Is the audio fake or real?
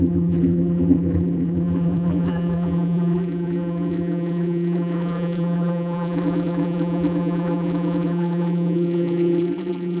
fake